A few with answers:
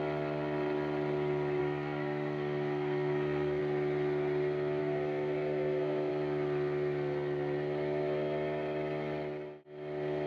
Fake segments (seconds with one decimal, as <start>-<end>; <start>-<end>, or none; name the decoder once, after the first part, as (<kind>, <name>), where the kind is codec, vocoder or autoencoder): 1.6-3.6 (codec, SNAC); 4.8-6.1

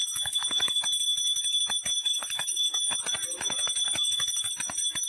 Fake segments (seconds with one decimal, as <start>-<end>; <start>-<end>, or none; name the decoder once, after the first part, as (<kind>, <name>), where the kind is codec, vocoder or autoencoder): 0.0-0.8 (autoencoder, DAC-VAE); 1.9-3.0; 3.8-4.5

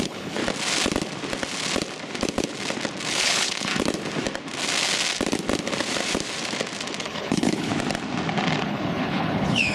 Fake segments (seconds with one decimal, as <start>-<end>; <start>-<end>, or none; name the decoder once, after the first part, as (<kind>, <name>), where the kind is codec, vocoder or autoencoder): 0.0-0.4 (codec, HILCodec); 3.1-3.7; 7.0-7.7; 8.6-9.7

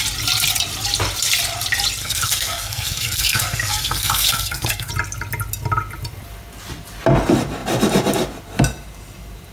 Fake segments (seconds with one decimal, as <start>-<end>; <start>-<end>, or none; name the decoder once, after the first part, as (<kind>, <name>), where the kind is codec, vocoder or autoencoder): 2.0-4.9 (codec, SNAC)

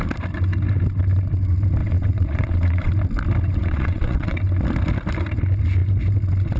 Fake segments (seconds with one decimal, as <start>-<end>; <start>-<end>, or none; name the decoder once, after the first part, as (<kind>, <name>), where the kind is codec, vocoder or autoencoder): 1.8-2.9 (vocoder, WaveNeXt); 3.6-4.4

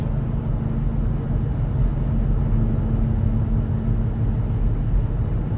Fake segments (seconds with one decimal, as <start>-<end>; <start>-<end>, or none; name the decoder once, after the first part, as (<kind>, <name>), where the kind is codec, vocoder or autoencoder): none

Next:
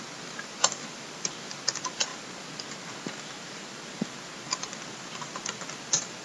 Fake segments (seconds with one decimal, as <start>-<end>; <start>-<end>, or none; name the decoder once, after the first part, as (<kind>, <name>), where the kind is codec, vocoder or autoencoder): 0.0-2.1 (vocoder, BigVGAN v2); 4.7-6.2

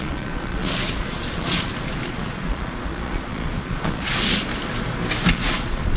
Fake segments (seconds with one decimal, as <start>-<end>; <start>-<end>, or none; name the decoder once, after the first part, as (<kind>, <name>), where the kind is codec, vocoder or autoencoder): 0.0-4.5 (vocoder, Vocos); 5.3-6.0